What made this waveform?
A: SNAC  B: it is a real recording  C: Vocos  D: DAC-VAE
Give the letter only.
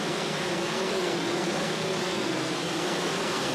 A